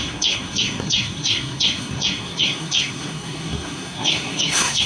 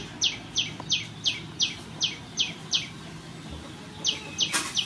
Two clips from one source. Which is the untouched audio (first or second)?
second